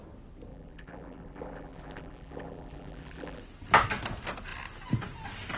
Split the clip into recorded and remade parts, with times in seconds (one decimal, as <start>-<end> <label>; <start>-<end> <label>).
0.0-0.5 recorded; 0.5-3.4 remade; 3.4-5.6 recorded